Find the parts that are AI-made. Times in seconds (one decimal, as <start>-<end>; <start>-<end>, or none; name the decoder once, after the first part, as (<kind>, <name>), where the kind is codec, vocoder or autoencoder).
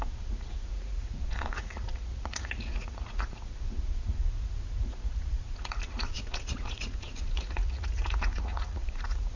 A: 0.0-9.4 (vocoder, Vocos)